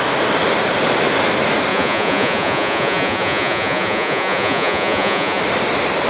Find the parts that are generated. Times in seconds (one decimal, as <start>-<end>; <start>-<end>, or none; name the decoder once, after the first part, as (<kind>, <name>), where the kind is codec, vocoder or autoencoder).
1.7-5.4 (vocoder, Vocos)